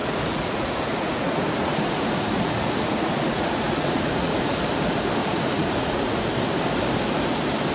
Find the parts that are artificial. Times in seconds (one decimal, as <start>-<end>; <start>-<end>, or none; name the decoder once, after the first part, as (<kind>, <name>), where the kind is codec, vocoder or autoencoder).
0.0-4.6 (vocoder, Vocos); 5.2-6.2